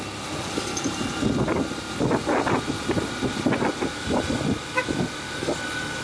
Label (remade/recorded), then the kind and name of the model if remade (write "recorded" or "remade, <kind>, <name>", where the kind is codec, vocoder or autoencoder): recorded